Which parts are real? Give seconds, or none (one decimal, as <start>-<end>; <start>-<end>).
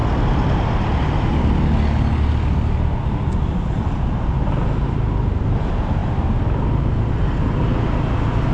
0.0-8.5